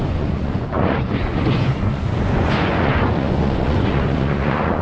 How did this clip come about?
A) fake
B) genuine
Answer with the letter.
A